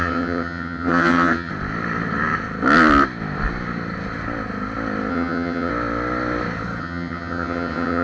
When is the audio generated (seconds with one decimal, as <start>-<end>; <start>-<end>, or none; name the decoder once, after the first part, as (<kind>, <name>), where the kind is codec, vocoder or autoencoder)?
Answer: 0.0-1.5 (vocoder, HiFi-GAN); 5.1-5.7; 6.8-8.0